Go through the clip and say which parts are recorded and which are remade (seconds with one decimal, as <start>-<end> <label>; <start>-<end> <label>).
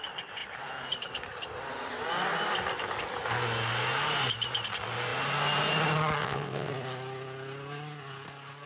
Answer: 0.0-6.2 recorded; 6.2-6.7 remade; 6.7-8.7 recorded